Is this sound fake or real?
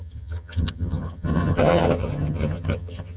fake